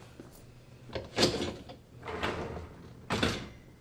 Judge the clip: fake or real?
real